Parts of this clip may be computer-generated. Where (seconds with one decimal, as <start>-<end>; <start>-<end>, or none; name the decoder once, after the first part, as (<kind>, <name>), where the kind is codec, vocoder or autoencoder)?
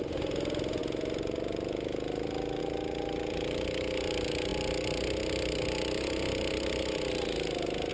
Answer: none